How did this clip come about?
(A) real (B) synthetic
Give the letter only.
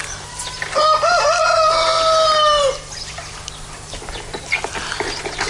A